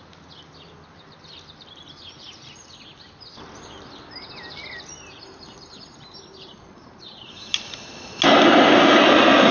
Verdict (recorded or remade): recorded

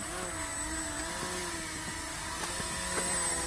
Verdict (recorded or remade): recorded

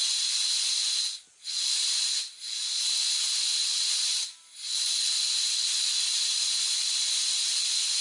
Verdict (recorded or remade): recorded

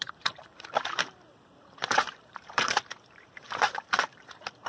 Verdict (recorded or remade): remade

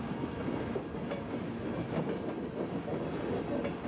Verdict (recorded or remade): recorded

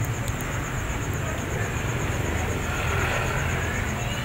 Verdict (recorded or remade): recorded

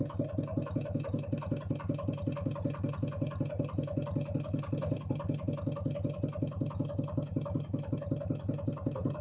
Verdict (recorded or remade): recorded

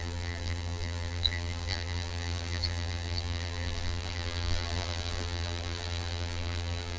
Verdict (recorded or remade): remade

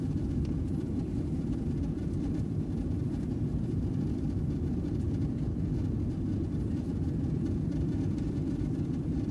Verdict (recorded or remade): remade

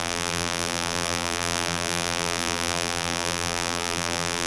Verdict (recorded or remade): remade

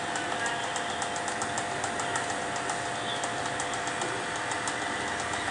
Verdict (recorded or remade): recorded